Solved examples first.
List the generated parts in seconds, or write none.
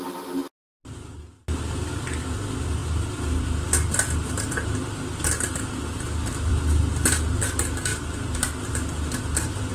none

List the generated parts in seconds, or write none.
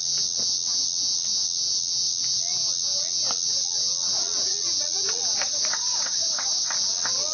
5.3-6.7 (vocoder, Vocos)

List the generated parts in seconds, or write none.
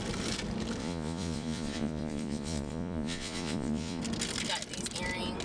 0.8-4.0 (vocoder, Vocos)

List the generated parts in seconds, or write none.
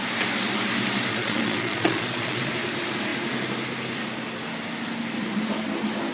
1.1-2.5 (vocoder, Vocos)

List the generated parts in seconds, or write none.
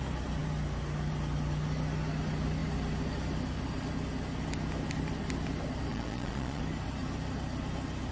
5.9-6.6 (vocoder, Vocos)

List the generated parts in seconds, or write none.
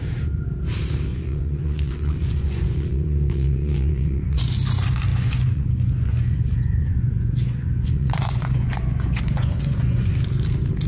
1.1-4.4 (vocoder, Vocos); 5.1-10.1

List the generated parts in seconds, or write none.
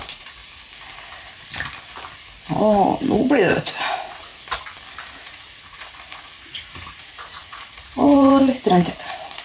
0.0-0.4 (vocoder, Vocos); 2.6-4.3; 5.2-9.4